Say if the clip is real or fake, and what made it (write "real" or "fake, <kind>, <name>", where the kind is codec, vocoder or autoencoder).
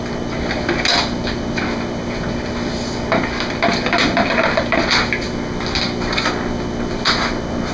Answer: real